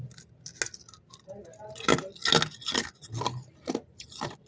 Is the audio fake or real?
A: real